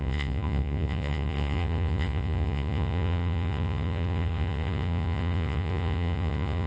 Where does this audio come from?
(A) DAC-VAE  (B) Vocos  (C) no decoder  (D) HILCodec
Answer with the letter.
B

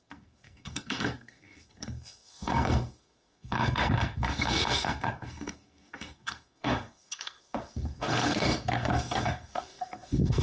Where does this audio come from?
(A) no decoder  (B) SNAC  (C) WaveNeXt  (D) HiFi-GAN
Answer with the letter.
B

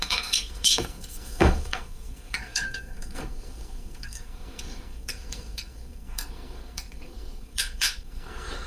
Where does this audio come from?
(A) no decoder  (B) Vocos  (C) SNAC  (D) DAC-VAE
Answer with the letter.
C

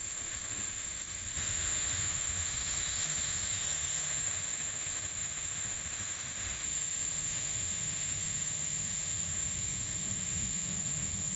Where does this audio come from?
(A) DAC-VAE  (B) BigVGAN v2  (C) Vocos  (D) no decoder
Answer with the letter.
A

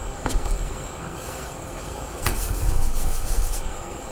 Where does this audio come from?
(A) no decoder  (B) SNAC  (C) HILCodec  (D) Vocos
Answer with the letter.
B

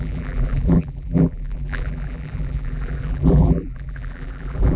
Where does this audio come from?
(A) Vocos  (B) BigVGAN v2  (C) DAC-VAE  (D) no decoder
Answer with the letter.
B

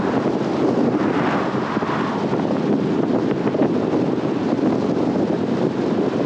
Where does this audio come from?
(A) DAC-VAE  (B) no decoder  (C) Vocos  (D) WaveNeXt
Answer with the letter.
B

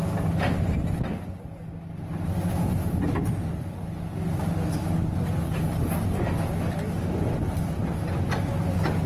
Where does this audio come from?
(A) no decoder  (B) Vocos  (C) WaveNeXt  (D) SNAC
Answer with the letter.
A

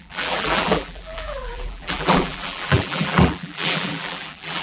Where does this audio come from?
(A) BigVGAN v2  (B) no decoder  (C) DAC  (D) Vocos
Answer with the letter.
A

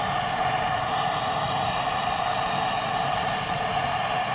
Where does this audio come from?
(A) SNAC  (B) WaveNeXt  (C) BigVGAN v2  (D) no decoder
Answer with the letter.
D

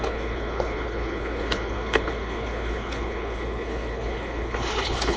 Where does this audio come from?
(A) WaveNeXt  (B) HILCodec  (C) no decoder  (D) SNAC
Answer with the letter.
B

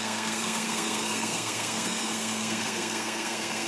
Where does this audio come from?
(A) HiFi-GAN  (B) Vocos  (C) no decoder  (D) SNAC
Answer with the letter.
D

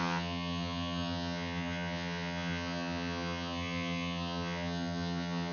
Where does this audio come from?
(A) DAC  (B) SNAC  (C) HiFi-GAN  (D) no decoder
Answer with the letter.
C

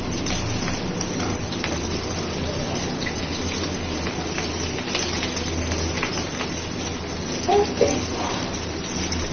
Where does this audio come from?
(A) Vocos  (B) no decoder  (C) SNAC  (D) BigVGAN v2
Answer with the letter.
B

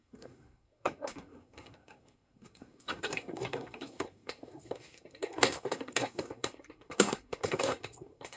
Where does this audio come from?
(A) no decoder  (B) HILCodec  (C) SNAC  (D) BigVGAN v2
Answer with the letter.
C